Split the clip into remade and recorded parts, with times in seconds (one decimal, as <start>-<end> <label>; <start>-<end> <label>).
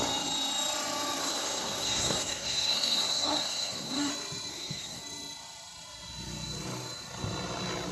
0.0-1.2 recorded; 1.2-4.1 remade; 4.1-4.5 recorded; 4.5-5.0 remade; 5.0-7.9 recorded